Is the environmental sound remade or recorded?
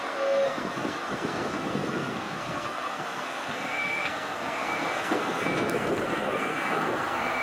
remade